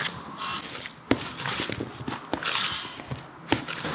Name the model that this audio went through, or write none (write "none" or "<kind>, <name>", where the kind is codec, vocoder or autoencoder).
none